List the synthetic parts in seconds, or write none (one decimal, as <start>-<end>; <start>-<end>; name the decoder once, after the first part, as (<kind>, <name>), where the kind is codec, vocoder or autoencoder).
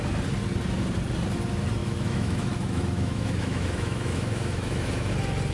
1.8-5.1 (autoencoder, DAC-VAE)